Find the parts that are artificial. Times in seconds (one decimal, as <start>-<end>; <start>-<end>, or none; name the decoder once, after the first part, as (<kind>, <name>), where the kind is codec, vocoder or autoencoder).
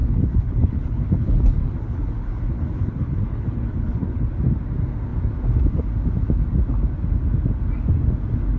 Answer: 0.0-4.3 (codec, HILCodec)